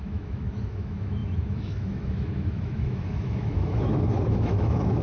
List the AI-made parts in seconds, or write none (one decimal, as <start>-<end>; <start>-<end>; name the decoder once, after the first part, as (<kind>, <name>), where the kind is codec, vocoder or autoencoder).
0.0-5.0 (autoencoder, DAC-VAE)

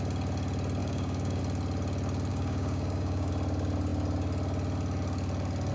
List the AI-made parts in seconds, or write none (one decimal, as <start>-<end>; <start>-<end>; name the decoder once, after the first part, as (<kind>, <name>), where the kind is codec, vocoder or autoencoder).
0.8-1.4 (codec, DAC); 2.3-3.3

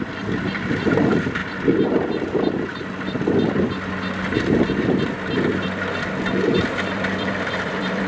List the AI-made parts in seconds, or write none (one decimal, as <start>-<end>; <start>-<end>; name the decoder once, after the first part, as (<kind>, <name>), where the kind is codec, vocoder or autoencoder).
0.0-1.4 (vocoder, BigVGAN v2); 6.3-8.1

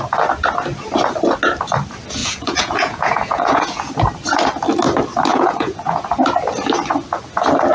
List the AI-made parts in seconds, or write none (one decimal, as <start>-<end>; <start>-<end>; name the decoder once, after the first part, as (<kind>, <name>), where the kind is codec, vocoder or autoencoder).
2.2-3.9 (vocoder, Vocos); 5.3-6.1

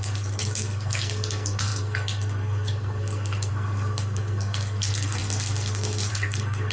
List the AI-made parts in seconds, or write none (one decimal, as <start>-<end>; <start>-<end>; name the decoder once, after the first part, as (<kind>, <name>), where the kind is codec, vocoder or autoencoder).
0.0-6.7 (codec, SNAC)

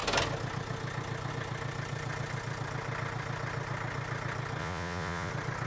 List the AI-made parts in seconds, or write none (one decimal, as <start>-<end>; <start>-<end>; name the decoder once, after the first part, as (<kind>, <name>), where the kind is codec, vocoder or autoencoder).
4.6-5.3 (vocoder, Vocos)

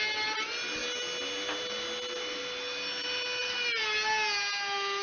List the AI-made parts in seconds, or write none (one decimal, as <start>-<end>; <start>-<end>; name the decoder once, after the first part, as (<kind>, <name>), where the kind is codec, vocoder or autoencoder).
none